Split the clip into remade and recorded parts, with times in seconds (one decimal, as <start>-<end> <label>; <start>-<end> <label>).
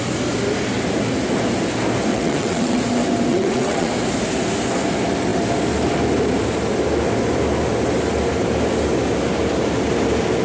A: 0.0-2.1 recorded; 2.1-2.8 remade; 2.8-3.3 recorded; 3.3-3.9 remade; 3.9-10.4 recorded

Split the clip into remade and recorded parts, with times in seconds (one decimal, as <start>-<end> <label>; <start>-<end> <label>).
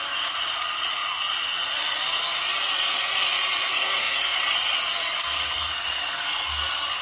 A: 0.0-3.7 recorded; 3.7-4.4 remade; 4.4-5.2 recorded; 5.2-7.0 remade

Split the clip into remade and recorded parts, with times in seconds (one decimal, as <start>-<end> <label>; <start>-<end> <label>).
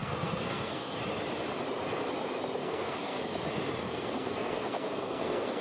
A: 0.0-1.0 remade; 1.0-2.6 recorded; 2.6-3.2 remade; 3.2-3.8 recorded; 3.8-5.6 remade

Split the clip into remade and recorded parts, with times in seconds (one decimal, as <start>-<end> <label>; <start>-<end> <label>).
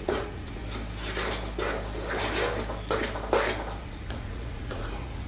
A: 0.0-0.6 remade; 0.6-3.8 recorded; 3.8-5.3 remade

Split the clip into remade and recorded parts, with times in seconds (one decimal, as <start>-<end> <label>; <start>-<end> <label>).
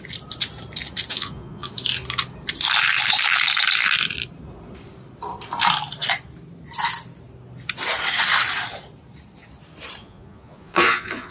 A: 0.0-1.1 recorded; 1.1-1.7 remade; 1.7-10.0 recorded; 10.0-11.3 remade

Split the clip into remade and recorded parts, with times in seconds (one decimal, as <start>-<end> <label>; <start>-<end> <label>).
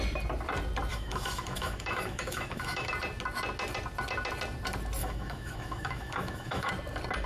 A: 0.0-0.9 recorded; 0.9-2.9 remade; 2.9-5.0 recorded; 5.0-6.7 remade; 6.7-7.3 recorded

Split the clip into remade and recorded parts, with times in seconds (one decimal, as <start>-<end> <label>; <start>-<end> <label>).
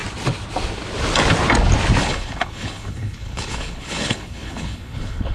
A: 0.0-2.0 recorded; 2.0-5.3 remade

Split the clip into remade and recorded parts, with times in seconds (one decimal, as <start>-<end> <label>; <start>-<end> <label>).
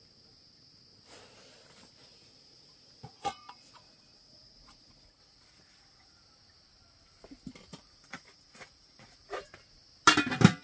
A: 0.0-2.0 recorded; 2.0-6.2 remade; 6.2-7.7 recorded; 7.7-9.5 remade; 9.5-10.6 recorded